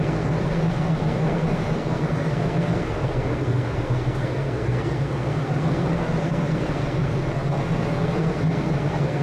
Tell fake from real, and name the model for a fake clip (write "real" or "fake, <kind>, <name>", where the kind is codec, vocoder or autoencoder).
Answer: fake, codec, SNAC